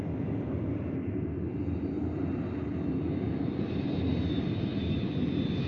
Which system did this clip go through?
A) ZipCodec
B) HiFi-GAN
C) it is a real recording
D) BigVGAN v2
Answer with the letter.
C